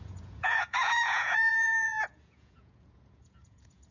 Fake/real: fake